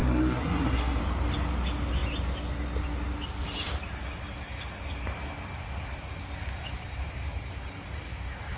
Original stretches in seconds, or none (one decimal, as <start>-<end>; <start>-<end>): 1.0-8.6